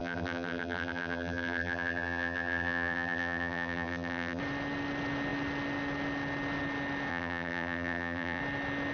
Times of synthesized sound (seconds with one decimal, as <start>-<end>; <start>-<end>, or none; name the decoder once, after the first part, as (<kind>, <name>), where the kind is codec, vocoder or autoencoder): 0.0-4.4 (vocoder, BigVGAN v2); 7.1-8.4